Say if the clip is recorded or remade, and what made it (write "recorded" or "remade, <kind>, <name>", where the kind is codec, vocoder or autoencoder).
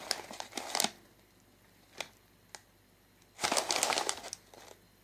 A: recorded